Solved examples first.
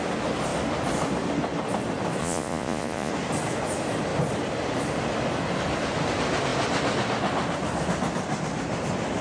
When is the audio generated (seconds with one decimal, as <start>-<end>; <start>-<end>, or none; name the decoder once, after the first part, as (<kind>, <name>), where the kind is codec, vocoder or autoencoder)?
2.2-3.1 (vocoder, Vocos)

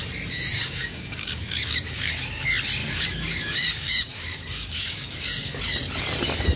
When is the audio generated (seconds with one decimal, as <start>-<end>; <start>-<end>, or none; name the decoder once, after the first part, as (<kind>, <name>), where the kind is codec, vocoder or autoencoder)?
0.5-2.1 (codec, DAC); 2.8-5.6

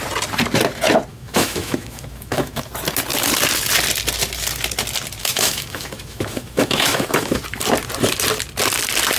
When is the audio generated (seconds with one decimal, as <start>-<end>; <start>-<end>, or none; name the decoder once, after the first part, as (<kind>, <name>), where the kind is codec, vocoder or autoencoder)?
1.1-2.7 (autoencoder, DAC-VAE); 5.2-7.4

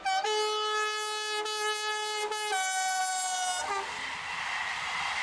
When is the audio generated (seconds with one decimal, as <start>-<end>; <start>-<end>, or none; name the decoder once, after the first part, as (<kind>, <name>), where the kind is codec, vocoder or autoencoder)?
none

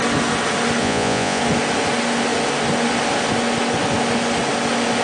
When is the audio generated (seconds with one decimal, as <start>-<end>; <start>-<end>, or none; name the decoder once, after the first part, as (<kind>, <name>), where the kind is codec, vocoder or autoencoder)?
0.8-1.4 (vocoder, Vocos)

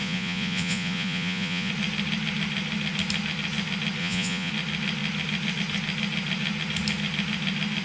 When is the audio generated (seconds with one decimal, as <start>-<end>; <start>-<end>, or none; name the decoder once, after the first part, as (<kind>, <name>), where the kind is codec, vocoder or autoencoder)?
0.0-1.7 (vocoder, Vocos); 4.0-4.5

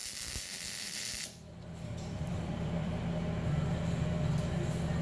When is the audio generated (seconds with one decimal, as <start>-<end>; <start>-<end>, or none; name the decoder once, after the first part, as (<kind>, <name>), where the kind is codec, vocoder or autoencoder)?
0.0-3.0 (vocoder, BigVGAN v2)